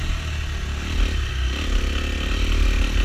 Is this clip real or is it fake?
real